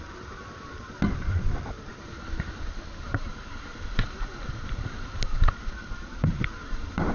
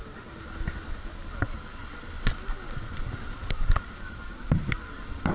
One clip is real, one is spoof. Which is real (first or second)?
second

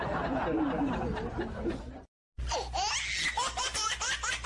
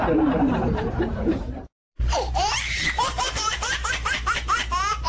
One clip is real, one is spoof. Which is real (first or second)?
first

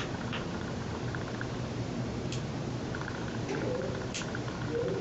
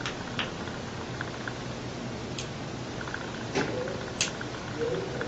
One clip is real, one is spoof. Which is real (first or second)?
second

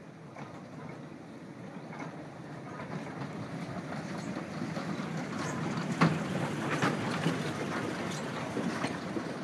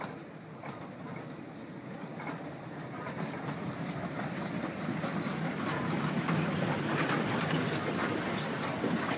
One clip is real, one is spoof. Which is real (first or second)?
second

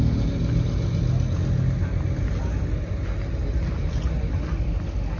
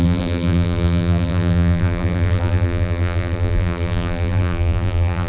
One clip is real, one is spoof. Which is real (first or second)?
first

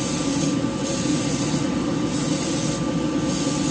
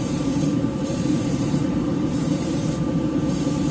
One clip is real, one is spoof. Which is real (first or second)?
first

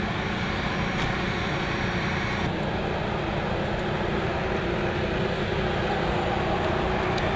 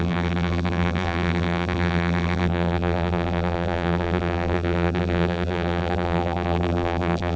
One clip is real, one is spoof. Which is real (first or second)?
first